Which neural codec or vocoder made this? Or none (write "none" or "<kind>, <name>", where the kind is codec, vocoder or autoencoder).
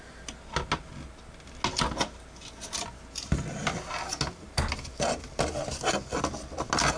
none